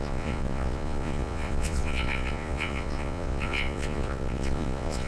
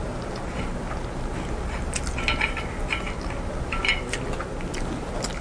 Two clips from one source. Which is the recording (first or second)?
second